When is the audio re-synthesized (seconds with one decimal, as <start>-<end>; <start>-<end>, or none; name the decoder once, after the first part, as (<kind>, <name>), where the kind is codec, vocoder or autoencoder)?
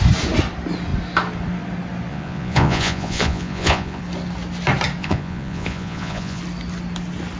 2.1-4.0 (vocoder, Vocos); 5.0-6.4